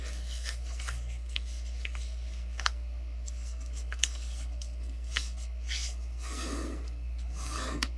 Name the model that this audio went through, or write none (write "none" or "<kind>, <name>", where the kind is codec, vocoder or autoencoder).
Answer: codec, SNAC